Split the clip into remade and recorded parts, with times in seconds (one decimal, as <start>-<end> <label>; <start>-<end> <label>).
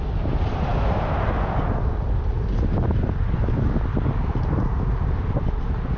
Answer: 0.0-6.0 recorded